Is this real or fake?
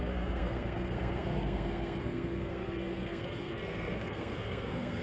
fake